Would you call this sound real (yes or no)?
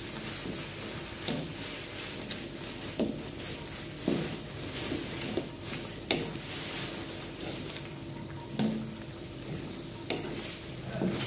yes